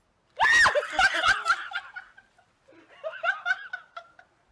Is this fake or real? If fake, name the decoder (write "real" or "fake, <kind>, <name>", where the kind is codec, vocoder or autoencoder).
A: real